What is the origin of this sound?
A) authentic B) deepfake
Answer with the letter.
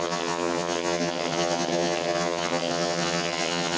B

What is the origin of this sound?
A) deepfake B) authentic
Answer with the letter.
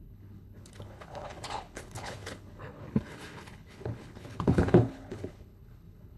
A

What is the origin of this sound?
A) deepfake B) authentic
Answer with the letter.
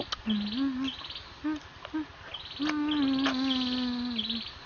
B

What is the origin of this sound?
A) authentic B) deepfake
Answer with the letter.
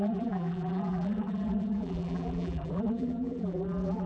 B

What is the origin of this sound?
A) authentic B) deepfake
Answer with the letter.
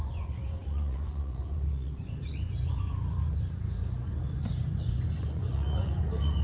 B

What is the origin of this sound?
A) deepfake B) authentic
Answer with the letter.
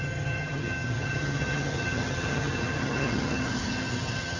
A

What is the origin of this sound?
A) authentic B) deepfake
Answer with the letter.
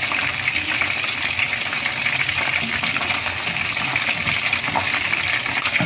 A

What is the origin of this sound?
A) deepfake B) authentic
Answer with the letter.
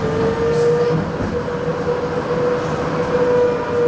B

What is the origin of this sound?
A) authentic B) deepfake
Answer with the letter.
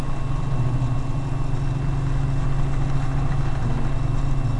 A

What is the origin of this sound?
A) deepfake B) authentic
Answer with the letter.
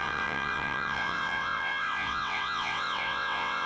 A